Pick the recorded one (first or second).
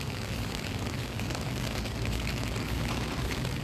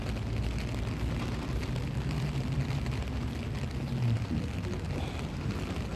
second